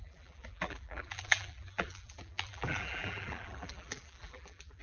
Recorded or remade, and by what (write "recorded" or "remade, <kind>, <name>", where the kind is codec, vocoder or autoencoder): remade, vocoder, BigVGAN v2